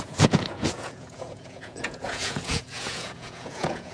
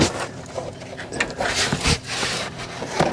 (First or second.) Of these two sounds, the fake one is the first